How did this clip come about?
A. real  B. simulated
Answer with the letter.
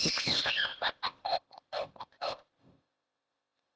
B